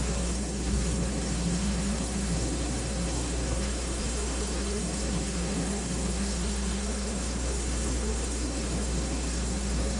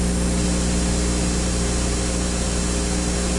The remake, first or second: first